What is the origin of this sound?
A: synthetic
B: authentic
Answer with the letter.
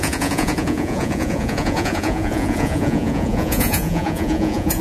A